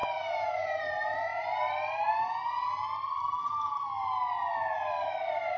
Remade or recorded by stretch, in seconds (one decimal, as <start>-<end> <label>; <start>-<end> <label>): 0.0-5.6 recorded